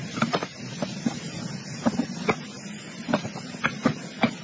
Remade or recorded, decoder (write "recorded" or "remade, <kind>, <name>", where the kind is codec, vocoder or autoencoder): remade, vocoder, BigVGAN v2